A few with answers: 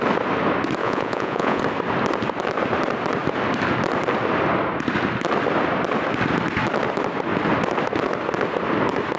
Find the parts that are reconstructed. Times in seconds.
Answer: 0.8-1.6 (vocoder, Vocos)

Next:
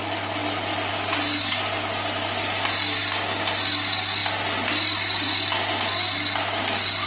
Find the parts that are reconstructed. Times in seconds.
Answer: none